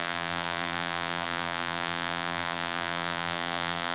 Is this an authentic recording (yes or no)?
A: no